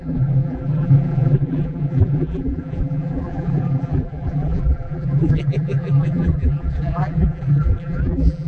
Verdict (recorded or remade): remade